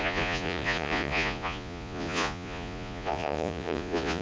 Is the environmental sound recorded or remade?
remade